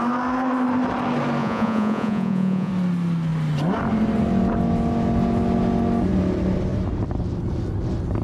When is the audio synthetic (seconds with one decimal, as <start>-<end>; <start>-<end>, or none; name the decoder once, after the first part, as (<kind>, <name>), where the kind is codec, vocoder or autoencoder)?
1.4-2.7 (vocoder, Vocos)